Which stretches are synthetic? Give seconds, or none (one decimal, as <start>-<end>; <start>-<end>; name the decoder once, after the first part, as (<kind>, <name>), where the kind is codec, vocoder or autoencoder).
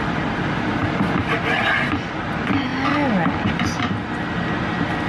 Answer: none